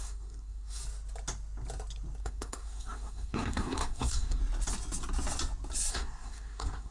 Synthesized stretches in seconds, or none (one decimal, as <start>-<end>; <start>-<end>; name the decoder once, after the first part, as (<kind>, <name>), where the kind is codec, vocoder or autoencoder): 0.0-0.8 (codec, SNAC); 2.2-4.4; 5.9-6.9